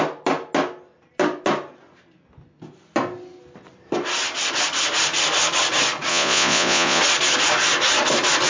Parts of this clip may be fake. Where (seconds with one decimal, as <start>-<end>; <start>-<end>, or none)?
6.1-7.0